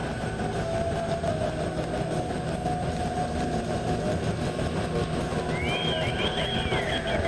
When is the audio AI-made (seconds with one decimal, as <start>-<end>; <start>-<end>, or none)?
none